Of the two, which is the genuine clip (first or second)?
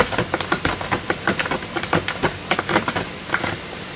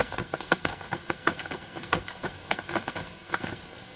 first